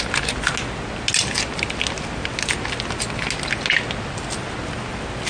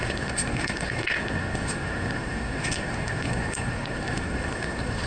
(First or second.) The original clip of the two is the first